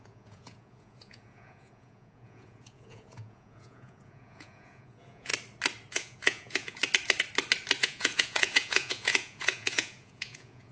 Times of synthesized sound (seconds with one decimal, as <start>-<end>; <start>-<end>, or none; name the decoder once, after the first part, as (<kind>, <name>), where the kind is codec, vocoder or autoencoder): 0.0-5.3 (vocoder, Vocos); 5.9-6.8; 7.8-10.7